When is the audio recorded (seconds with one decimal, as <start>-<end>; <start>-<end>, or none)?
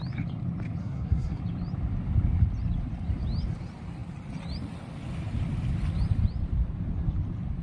0.0-0.8; 1.4-7.6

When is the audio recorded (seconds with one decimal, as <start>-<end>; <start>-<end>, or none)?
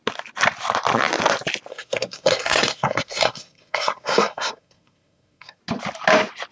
0.0-1.7; 5.6-6.5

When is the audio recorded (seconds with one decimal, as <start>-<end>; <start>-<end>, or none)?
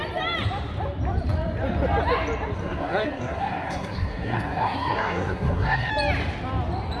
0.0-2.6; 5.9-7.0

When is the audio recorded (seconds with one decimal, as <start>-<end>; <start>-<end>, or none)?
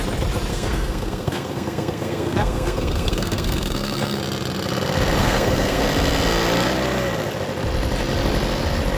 0.0-0.5; 4.2-5.2; 5.8-9.0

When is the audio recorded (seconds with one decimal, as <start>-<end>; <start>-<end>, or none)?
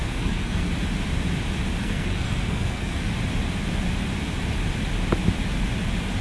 0.7-1.8; 3.1-6.2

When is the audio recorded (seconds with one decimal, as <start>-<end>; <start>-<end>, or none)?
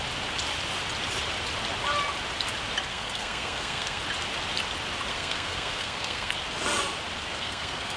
0.0-2.9; 4.0-5.1; 6.4-7.3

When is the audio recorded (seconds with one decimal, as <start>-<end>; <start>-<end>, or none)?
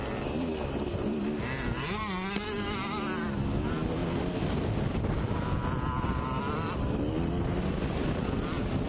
0.0-8.9